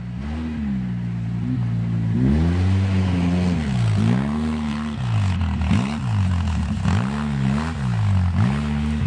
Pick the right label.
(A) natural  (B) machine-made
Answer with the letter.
A